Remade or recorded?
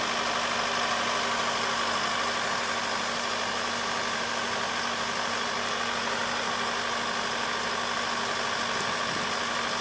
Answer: recorded